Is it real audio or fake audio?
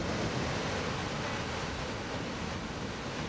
real